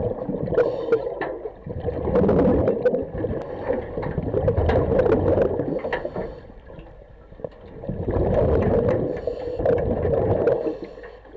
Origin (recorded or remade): recorded